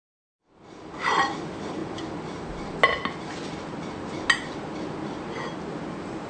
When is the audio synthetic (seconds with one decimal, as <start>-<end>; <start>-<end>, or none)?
none